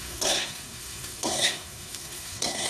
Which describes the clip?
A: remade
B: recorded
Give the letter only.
A